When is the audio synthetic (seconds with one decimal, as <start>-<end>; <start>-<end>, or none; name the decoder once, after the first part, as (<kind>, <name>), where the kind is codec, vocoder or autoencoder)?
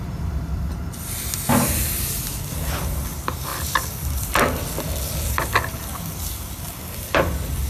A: 3.5-4.6 (vocoder, BigVGAN v2)